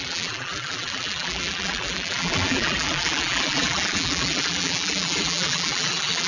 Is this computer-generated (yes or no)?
yes